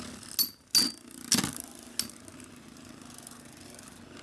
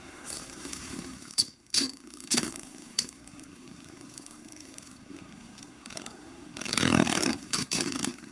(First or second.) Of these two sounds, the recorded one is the first